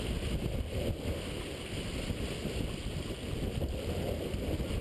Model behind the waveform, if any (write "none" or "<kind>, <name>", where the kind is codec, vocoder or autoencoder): none